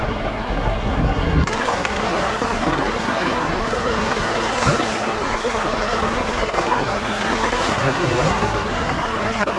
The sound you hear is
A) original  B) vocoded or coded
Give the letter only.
B